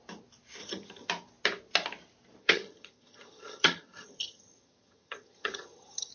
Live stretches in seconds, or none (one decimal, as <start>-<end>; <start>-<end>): 0.0-0.6; 1.1-2.4